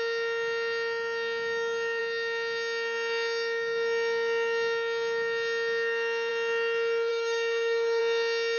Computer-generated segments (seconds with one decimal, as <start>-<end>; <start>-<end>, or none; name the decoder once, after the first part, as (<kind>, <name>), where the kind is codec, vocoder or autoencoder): 7.1-8.0 (codec, DAC)

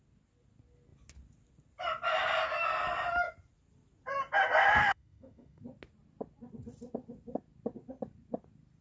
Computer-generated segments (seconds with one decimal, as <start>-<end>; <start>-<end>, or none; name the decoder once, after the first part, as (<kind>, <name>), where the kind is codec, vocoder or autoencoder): 4.8-5.6 (autoencoder, DAC-VAE)

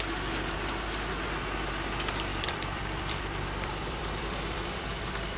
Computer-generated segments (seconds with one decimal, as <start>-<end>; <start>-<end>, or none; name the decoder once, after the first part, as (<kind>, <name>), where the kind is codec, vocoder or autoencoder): 2.3-5.4 (vocoder, BigVGAN v2)